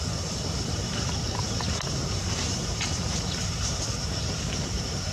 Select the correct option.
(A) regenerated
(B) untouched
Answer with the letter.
A